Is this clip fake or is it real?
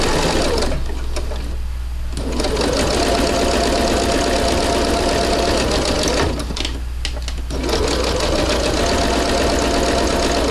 real